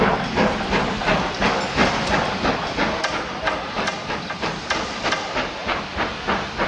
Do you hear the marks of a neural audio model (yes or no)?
no